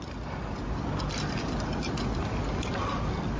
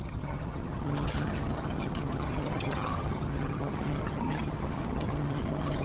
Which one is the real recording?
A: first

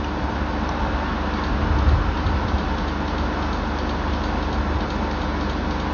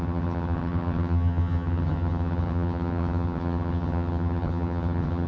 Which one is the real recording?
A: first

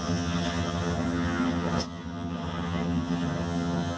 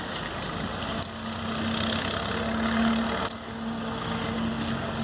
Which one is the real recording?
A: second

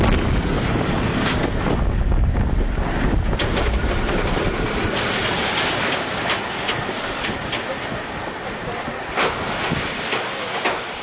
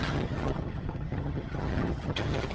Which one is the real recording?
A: first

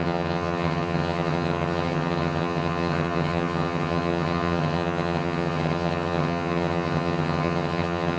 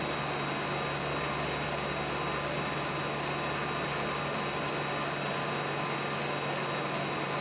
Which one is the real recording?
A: second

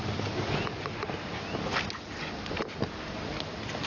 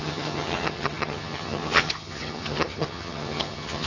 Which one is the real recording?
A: first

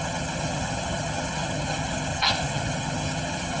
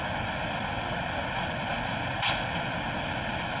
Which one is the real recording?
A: second